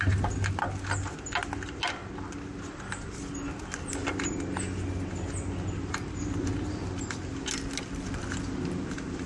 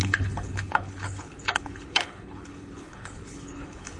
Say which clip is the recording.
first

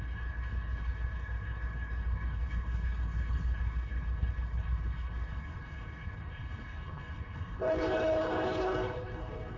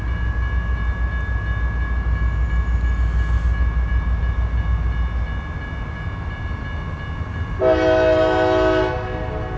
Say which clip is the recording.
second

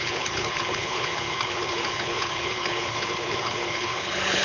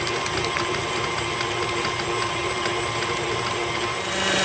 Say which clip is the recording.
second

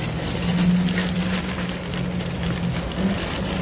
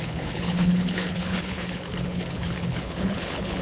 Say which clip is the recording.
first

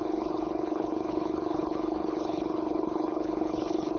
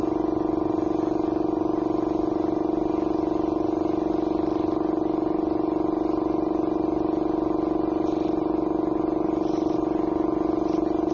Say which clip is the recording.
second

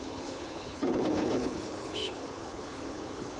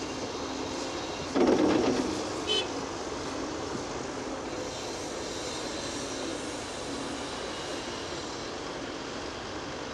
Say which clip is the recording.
second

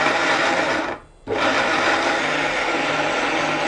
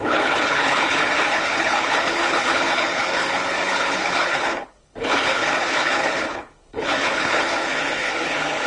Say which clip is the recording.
first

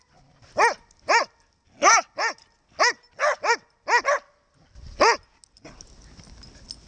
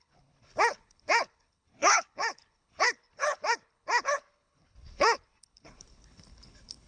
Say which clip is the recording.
first